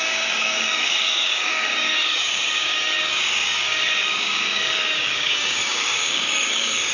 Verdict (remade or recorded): remade